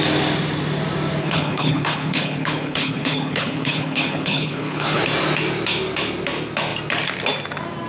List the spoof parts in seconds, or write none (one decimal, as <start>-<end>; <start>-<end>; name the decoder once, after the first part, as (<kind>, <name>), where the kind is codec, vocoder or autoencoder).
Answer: 1.2-5.0 (codec, HILCodec)